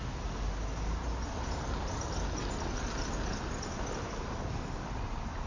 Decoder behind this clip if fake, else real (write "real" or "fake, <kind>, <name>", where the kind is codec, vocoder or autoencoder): real